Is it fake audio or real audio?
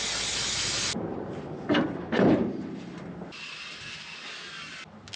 real